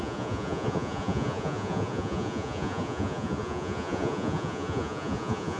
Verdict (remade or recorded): remade